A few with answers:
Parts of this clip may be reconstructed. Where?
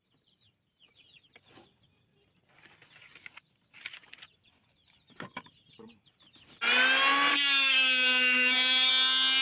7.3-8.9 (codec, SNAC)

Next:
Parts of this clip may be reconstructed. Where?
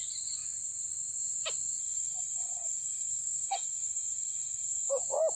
1.8-5.0 (codec, SNAC)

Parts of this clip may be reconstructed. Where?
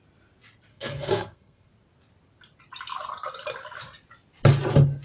0.7-1.7 (codec, SNAC)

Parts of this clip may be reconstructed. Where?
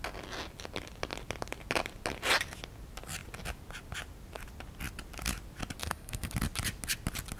5.8-6.3 (codec, SNAC)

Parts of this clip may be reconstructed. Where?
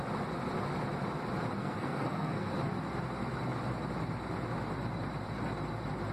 1.6-2.5 (codec, SNAC)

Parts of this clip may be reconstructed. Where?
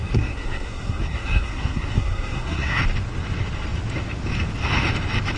0.0-2.8 (codec, SNAC)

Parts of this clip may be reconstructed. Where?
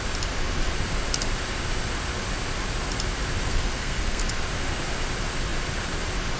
3.5-4.2 (codec, SNAC)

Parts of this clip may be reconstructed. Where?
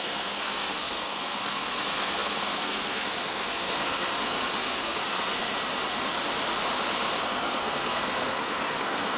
0.0-5.5 (codec, SNAC); 7.2-9.2